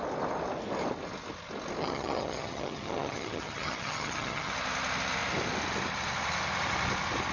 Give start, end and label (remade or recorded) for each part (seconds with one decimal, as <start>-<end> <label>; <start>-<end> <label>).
0.0-1.8 recorded; 1.8-4.5 remade; 4.5-7.3 recorded